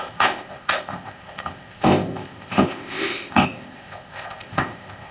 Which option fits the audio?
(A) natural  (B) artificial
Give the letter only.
B